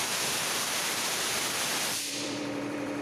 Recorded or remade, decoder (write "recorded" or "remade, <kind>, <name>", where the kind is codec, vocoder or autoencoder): remade, vocoder, BigVGAN v2